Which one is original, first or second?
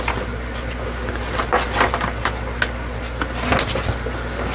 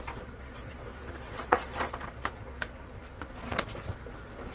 first